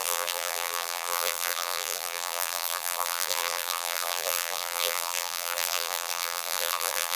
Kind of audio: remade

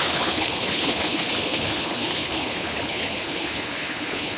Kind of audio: remade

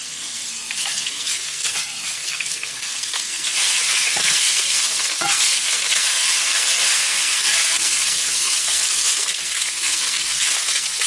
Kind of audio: remade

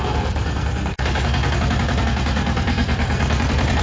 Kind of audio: remade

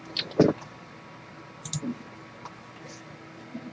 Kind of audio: recorded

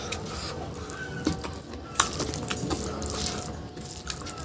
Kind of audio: recorded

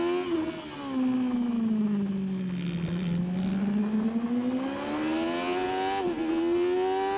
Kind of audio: recorded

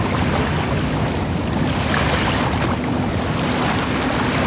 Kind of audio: recorded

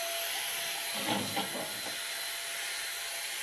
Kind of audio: recorded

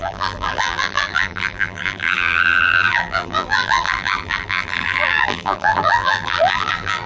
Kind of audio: remade